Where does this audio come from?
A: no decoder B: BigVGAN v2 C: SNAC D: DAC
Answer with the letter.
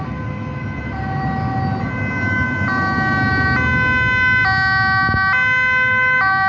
A